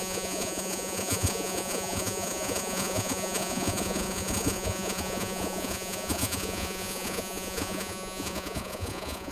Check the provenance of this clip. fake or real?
fake